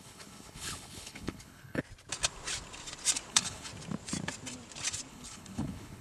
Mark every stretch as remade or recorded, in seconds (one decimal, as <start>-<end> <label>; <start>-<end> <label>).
0.0-1.8 remade; 1.8-3.3 recorded; 3.3-3.7 remade; 3.7-5.1 recorded; 5.1-6.0 remade